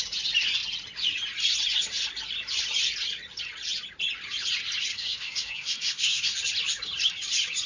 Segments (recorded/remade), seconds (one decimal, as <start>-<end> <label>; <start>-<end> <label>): 0.0-4.9 recorded; 4.9-6.3 remade; 6.3-7.7 recorded